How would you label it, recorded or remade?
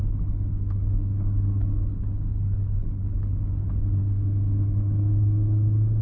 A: remade